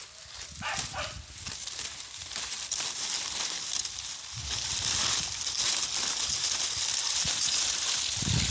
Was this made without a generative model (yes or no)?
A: yes